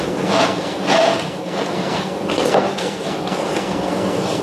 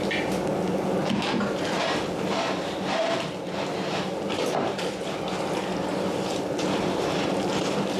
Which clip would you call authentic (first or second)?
second